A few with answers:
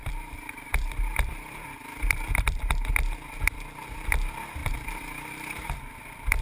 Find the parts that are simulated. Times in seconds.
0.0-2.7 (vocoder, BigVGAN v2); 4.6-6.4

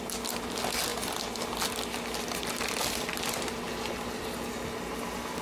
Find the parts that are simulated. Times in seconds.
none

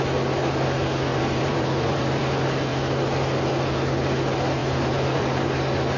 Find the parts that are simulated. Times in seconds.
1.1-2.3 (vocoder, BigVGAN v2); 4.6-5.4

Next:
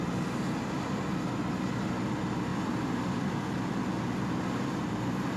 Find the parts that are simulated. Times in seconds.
2.5-3.1 (vocoder, BigVGAN v2)